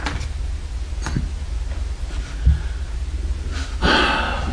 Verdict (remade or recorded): recorded